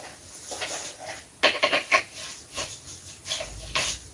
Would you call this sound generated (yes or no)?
no